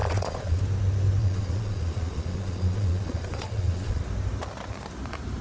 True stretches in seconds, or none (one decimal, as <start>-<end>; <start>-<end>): 0.6-1.2; 4.0-5.4